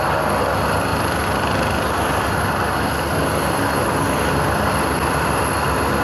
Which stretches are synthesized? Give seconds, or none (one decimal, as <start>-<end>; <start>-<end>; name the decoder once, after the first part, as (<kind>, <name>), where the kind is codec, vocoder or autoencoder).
0.9-3.9 (vocoder, BigVGAN v2)